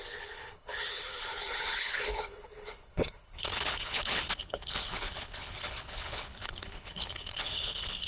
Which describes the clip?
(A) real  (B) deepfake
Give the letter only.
B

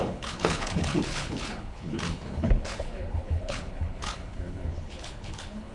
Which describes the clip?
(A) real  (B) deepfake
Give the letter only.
B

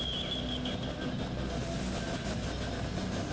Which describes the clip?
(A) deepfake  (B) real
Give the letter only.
B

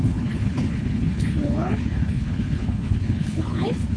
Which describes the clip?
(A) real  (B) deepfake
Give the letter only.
B